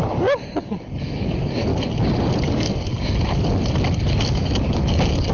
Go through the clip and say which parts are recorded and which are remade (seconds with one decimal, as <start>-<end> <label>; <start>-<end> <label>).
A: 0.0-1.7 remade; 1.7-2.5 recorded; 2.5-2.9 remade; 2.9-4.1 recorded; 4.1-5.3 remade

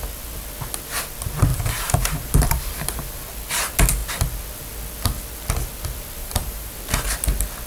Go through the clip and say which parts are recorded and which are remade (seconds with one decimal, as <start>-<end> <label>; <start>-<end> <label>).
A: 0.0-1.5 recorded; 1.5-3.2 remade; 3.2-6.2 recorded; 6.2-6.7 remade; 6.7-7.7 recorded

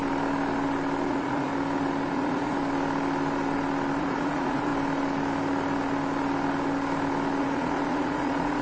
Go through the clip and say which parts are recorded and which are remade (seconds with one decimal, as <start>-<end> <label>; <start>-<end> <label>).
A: 0.0-1.1 recorded; 1.1-1.5 remade; 1.5-2.1 recorded; 2.1-2.6 remade; 2.6-4.0 recorded; 4.0-4.7 remade; 4.7-7.4 recorded; 7.4-8.6 remade